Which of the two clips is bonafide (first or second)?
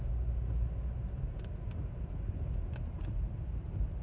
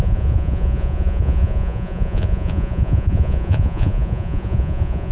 first